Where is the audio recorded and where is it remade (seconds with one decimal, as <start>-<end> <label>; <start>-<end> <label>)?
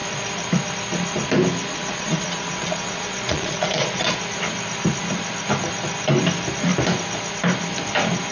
0.0-1.7 recorded; 1.7-4.2 remade; 4.2-8.3 recorded